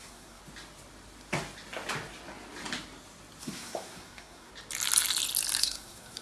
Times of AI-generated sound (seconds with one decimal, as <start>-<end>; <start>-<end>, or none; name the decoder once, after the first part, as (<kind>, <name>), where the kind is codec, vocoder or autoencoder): 0.0-0.4 (codec, SNAC); 3.4-4.5; 5.6-6.2